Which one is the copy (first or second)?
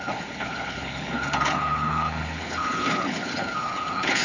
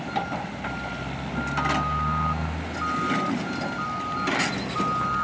first